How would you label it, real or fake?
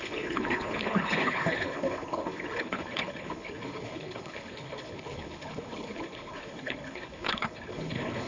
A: fake